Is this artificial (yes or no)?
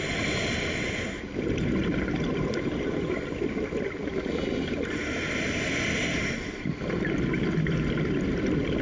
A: no